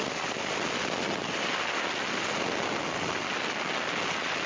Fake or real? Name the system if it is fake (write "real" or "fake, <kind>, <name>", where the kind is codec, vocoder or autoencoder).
real